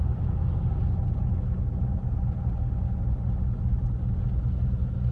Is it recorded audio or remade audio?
recorded